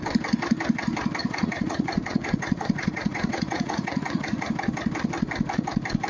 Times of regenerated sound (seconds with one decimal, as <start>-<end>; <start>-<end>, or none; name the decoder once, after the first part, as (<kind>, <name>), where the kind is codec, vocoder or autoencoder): 1.2-4.5 (vocoder, Vocos)